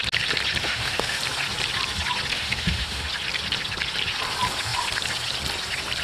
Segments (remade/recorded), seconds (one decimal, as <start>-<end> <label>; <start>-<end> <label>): 0.0-0.6 recorded; 0.6-1.2 remade; 1.2-2.3 recorded; 2.3-3.1 remade; 3.1-6.0 recorded